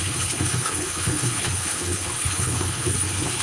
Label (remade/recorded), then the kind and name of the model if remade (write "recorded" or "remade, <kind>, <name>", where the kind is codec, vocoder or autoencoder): remade, codec, HILCodec